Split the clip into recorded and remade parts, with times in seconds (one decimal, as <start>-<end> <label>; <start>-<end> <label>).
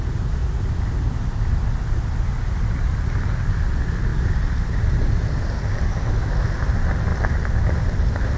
0.0-8.4 recorded